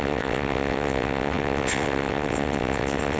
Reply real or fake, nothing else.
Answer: fake